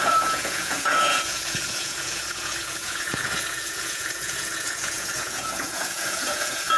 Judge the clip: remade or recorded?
remade